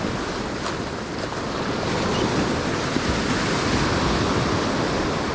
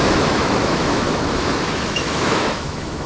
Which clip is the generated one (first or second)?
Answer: second